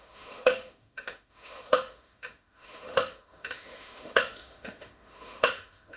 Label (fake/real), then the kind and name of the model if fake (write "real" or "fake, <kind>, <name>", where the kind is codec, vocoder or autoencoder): fake, autoencoder, DAC-VAE